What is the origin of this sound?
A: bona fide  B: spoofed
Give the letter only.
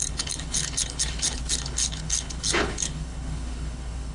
B